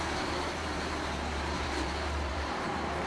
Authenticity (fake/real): fake